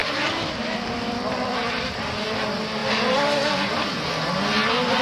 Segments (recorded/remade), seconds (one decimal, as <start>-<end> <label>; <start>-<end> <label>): 0.0-1.6 remade; 1.6-2.8 recorded; 2.8-3.9 remade; 3.9-5.0 recorded